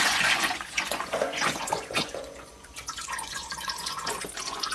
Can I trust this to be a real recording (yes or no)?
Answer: no